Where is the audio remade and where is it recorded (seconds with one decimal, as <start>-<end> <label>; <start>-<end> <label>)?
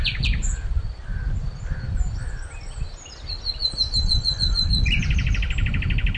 0.0-1.1 remade; 1.1-2.1 recorded; 2.1-6.2 remade